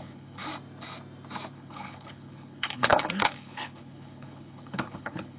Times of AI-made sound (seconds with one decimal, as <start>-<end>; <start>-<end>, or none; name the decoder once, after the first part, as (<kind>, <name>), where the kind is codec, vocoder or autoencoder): 0.0-0.5 (codec, HILCodec); 1.5-5.4

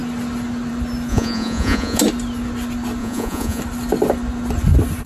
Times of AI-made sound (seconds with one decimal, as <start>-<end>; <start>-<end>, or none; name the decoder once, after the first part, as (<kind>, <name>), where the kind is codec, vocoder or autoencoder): 1.1-2.0 (vocoder, Vocos); 3.0-3.6

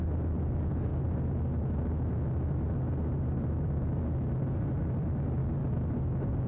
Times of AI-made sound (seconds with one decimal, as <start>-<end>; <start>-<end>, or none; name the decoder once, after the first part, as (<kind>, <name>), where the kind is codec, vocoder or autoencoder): none